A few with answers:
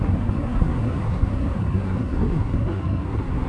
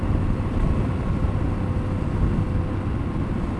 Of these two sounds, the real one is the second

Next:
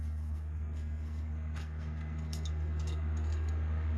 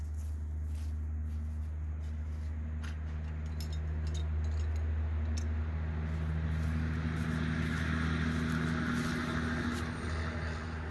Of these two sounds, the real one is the second